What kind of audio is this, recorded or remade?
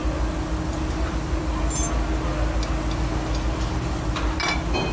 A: recorded